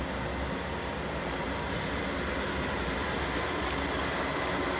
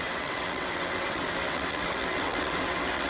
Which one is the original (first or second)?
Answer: first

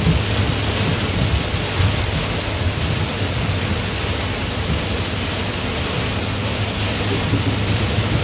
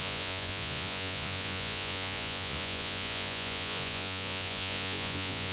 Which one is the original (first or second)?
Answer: first